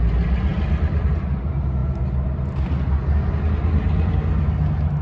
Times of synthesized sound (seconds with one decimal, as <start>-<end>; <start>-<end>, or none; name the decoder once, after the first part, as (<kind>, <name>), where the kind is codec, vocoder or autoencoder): none